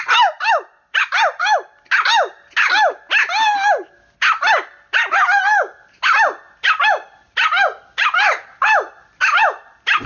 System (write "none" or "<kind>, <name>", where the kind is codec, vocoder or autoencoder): none